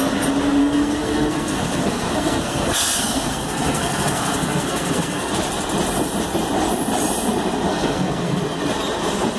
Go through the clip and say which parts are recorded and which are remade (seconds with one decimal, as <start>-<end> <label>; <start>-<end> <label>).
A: 0.0-0.6 recorded; 0.6-5.3 remade; 5.3-7.7 recorded; 7.7-8.4 remade; 8.4-9.4 recorded